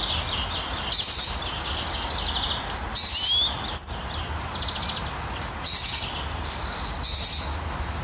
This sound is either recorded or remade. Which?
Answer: recorded